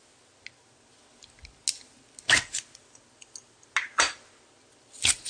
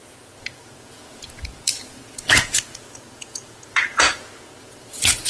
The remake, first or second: second